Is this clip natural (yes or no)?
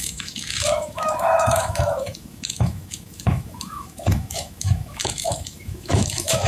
no